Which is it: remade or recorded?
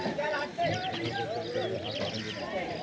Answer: remade